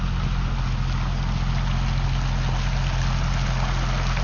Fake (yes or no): no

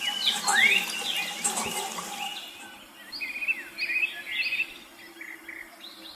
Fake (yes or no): no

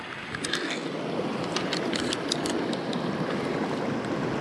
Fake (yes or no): no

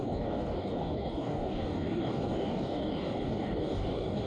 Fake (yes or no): yes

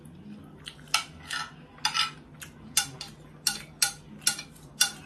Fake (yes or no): no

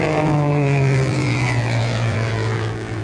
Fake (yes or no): yes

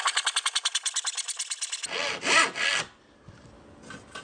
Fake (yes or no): no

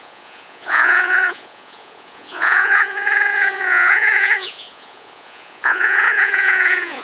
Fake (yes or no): yes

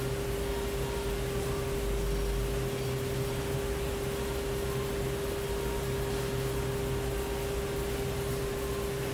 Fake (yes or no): no